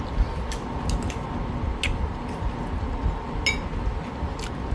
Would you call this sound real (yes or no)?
yes